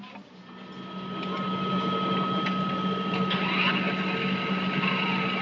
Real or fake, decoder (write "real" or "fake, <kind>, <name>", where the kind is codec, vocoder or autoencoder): real